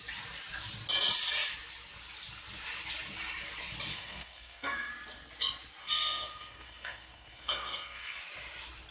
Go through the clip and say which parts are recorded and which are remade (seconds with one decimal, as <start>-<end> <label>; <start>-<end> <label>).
0.0-3.9 recorded; 3.9-4.9 remade; 4.9-5.8 recorded; 5.8-8.2 remade; 8.2-8.9 recorded